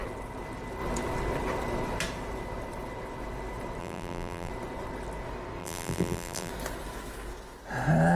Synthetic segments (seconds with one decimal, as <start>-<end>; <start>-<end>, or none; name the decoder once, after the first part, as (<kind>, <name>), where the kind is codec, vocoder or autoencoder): 3.8-4.5 (vocoder, BigVGAN v2); 5.6-6.5